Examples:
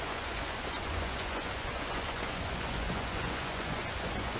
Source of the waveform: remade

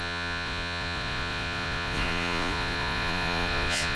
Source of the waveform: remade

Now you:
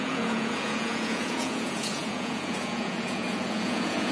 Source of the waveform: remade